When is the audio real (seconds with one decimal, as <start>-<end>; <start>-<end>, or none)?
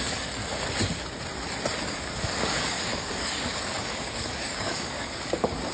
0.4-1.8